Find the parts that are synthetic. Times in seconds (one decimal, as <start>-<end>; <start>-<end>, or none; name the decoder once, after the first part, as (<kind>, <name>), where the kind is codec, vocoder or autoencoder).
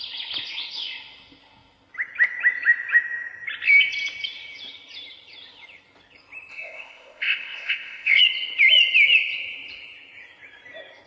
6.5-8.2 (codec, ZipCodec)